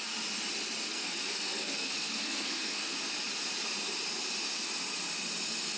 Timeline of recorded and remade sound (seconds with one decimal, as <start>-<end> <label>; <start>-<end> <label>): 0.0-0.9 recorded; 0.9-2.9 remade; 2.9-5.8 recorded